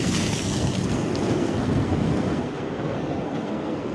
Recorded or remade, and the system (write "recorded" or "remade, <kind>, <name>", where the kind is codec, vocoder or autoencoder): remade, codec, SNAC